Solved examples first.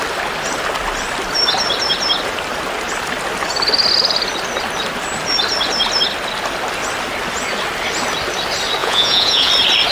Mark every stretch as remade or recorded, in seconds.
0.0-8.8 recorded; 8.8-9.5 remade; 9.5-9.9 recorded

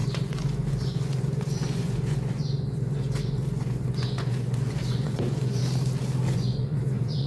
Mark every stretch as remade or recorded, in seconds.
0.0-5.6 remade; 5.6-6.3 recorded; 6.3-7.3 remade

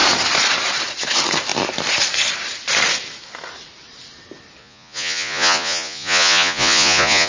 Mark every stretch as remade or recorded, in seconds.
0.0-4.6 recorded; 4.6-7.3 remade